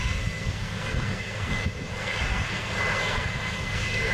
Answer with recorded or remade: remade